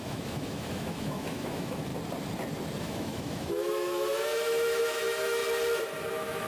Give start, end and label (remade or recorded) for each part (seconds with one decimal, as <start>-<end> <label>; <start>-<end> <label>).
0.0-1.9 remade; 1.9-2.8 recorded; 2.8-5.4 remade; 5.4-6.1 recorded; 6.1-6.5 remade